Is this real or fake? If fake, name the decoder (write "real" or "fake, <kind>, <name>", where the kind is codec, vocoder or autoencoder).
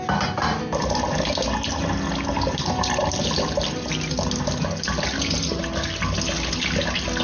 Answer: real